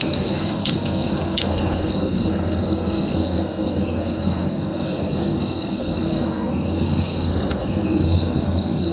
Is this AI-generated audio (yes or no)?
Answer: yes